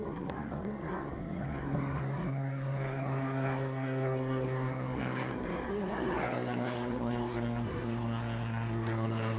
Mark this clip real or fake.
fake